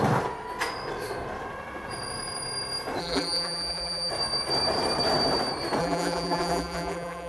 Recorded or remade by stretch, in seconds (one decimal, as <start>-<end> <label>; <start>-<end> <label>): 0.0-3.0 recorded; 3.0-4.1 remade; 4.1-5.8 recorded; 5.8-7.3 remade